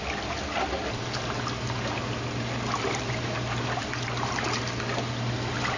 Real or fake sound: real